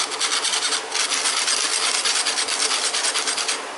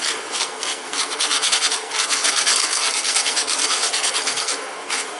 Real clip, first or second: first